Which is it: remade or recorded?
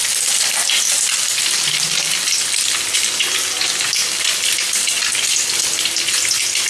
recorded